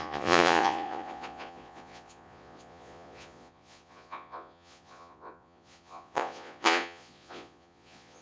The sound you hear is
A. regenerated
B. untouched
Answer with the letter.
A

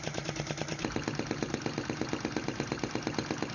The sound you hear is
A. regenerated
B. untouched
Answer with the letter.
B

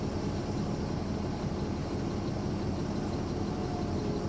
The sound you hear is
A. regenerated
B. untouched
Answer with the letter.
B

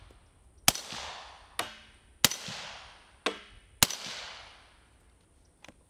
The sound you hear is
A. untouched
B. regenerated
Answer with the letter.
A